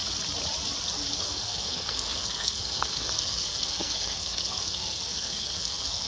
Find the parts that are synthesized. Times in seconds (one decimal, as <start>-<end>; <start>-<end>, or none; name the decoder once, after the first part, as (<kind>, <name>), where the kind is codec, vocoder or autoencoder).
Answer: 1.1-6.1 (codec, SNAC)